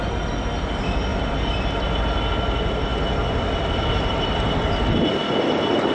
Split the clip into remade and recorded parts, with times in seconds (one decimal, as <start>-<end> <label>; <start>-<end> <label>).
0.0-5.9 recorded